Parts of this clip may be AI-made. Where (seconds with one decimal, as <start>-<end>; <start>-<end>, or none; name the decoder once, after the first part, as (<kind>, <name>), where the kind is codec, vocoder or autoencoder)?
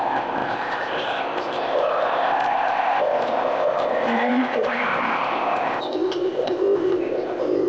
0.0-7.7 (codec, ZipCodec)